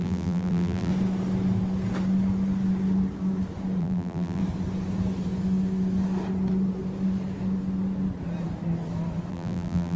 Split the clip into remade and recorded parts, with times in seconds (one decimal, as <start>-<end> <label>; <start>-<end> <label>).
0.0-0.9 remade; 0.9-3.8 recorded; 3.8-4.4 remade; 4.4-9.3 recorded; 9.3-10.0 remade